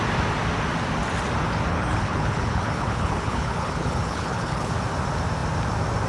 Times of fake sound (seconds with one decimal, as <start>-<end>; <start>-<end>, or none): 1.7-4.7